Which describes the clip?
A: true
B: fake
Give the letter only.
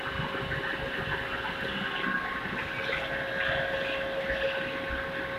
A